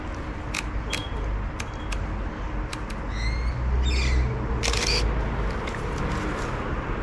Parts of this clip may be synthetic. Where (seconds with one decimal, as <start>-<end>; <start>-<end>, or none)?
none